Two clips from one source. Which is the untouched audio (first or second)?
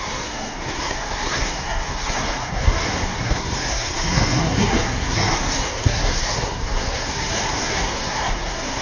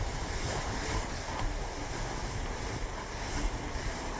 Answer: second